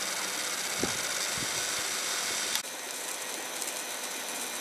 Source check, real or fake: real